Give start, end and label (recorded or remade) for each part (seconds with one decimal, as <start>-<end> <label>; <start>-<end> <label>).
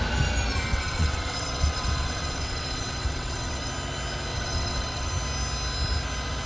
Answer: 0.0-0.7 recorded; 0.7-3.7 remade; 3.7-4.3 recorded; 4.3-5.1 remade; 5.1-6.5 recorded